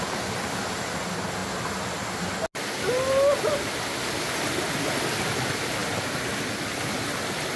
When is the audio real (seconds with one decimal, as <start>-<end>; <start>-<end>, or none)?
0.0-7.6